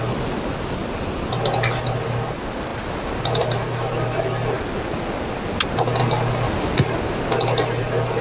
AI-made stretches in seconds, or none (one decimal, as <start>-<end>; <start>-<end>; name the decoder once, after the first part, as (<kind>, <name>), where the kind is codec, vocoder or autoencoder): none